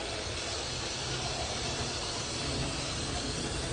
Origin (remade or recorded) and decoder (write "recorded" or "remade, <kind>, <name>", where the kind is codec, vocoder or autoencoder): recorded